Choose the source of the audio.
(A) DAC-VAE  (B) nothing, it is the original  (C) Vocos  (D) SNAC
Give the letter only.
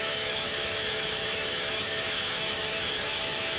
A